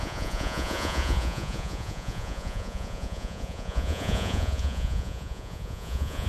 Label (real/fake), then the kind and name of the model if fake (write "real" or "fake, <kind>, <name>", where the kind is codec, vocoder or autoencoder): fake, vocoder, Vocos